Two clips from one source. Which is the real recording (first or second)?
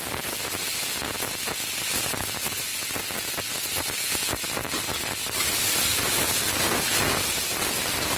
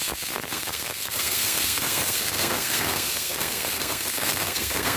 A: first